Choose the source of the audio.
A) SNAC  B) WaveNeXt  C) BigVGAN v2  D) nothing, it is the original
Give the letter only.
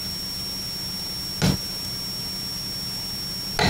D